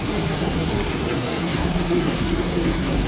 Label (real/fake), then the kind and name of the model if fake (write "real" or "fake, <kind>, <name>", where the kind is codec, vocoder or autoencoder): fake, codec, SNAC